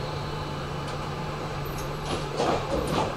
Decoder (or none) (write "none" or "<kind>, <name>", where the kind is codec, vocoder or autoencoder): vocoder, BigVGAN v2